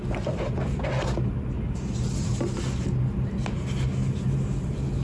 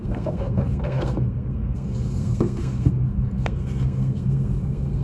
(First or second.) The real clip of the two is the first